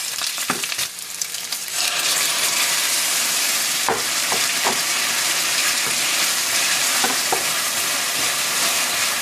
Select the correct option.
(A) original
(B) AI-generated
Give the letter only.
B